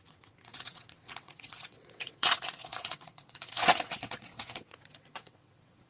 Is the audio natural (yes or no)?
no